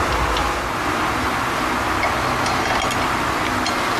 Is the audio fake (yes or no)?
no